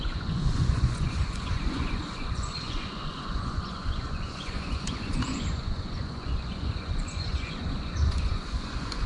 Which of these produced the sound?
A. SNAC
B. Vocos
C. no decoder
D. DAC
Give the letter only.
B